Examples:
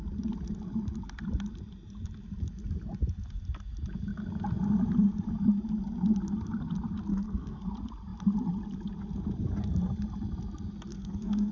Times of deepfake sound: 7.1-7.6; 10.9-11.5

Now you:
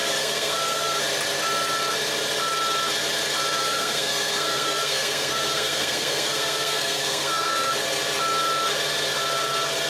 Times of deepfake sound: 0.0-1.0; 3.6-7.7

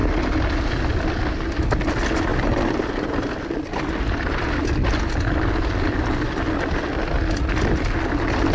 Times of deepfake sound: 2.3-3.2

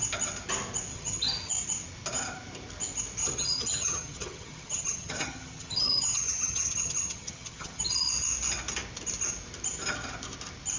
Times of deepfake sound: 0.9-1.5; 3.2-7.8

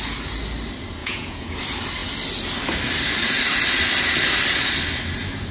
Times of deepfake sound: 1.0-1.6

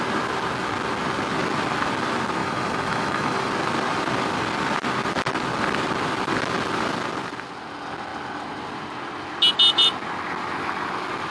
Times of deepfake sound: 2.4-3.5